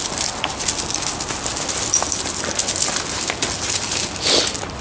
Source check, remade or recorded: recorded